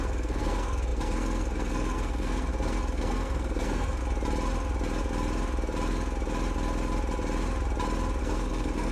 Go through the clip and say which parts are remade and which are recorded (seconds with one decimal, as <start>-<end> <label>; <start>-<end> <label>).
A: 0.0-4.0 remade; 4.0-8.2 recorded; 8.2-8.9 remade